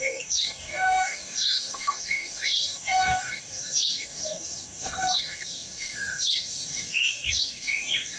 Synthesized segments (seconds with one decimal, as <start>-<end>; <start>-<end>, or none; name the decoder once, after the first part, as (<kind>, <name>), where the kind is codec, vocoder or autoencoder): 0.0-8.2 (codec, DAC)